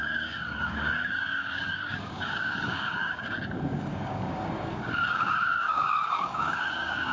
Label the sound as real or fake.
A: fake